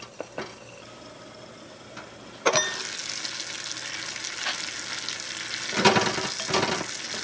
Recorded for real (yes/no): yes